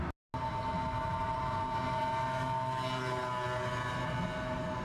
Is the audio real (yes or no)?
yes